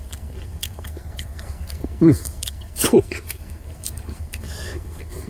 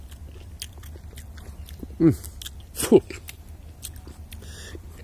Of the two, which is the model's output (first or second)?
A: first